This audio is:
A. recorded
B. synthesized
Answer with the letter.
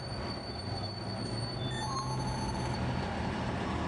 A